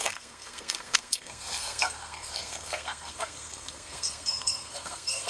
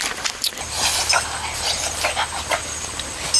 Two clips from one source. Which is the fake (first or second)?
first